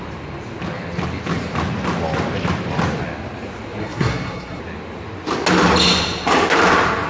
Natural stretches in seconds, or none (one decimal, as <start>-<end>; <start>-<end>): 0.0-3.8; 4.6-7.1